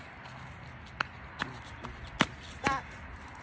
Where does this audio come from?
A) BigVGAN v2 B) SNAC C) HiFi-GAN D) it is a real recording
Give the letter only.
D